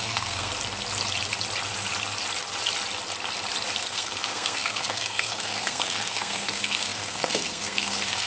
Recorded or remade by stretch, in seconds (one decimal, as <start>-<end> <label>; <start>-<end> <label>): 0.0-0.5 remade; 0.5-3.8 recorded; 3.8-8.3 remade